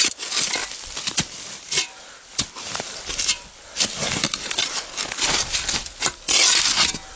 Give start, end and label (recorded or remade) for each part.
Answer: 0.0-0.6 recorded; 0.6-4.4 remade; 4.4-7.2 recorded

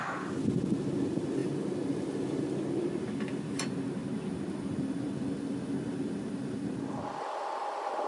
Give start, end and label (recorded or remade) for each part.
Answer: 0.0-8.1 recorded